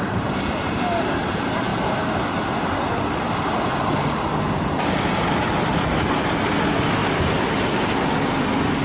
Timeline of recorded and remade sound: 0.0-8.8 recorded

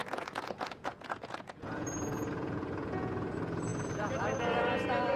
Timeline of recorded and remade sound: 0.0-3.1 remade; 3.1-3.7 recorded; 3.7-5.2 remade

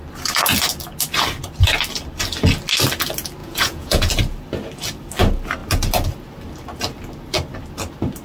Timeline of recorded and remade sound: 0.0-3.4 recorded; 3.4-4.1 remade; 4.1-8.2 recorded